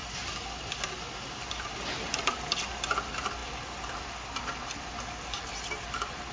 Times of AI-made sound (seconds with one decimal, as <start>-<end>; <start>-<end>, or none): none